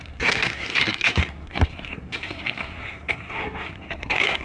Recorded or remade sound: remade